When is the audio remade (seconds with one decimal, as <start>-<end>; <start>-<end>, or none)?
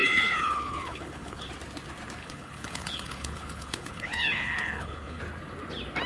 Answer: 0.0-1.5; 2.2-5.2